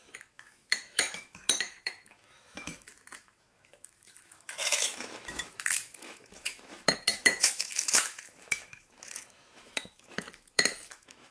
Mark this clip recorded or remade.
remade